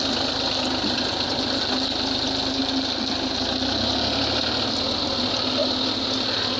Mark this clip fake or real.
real